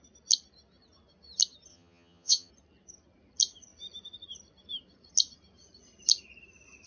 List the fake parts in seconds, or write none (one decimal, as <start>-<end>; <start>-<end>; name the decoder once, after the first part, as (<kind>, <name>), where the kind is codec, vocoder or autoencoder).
1.7-2.5 (vocoder, HiFi-GAN)